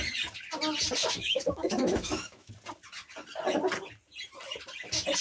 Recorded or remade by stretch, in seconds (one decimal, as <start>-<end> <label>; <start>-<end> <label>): 0.0-1.0 recorded; 1.0-2.5 remade; 2.5-5.2 recorded

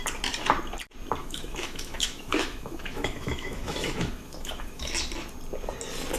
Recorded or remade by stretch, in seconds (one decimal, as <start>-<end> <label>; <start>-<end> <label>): 0.0-1.2 recorded; 1.2-4.9 remade; 4.9-6.2 recorded

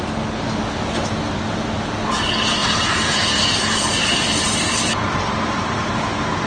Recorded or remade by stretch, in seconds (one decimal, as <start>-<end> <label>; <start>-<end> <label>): 0.0-2.6 recorded; 2.6-5.9 remade; 5.9-6.5 recorded

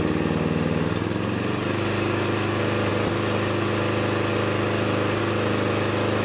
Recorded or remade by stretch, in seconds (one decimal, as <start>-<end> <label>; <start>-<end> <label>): 0.0-6.2 recorded